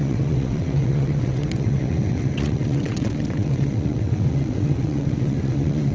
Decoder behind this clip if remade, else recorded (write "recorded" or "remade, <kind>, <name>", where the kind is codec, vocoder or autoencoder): remade, vocoder, WaveNeXt